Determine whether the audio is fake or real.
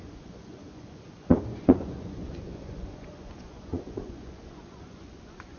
fake